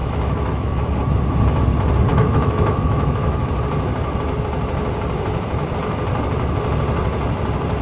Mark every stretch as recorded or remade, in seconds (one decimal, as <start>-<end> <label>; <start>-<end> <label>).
0.0-1.0 remade; 1.0-2.1 recorded; 2.1-3.5 remade; 3.5-7.8 recorded